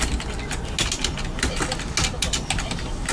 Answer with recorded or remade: recorded